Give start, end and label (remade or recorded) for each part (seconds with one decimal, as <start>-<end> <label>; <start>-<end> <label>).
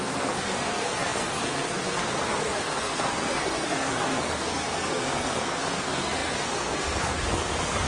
0.0-7.9 remade